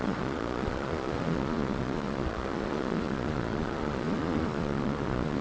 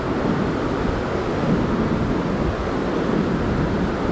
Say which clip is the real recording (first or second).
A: second